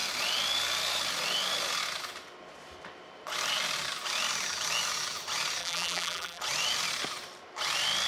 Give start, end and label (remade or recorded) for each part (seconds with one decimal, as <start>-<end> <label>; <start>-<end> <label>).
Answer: 0.0-5.6 recorded; 5.6-6.4 remade; 6.4-8.1 recorded